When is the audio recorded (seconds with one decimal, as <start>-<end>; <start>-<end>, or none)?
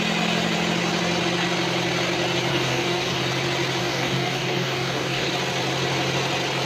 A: 0.0-2.5; 3.2-3.8; 5.3-6.7